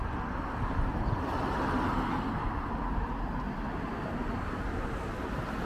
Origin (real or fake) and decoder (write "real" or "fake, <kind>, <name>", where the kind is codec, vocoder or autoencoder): real